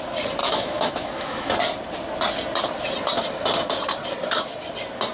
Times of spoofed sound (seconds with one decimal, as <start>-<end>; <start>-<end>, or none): 0.4-1.5